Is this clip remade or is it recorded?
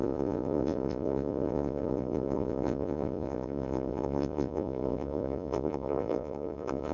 remade